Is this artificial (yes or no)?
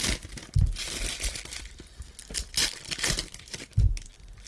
no